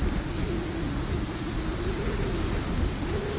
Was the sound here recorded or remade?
recorded